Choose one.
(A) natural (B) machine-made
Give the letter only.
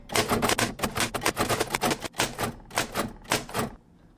A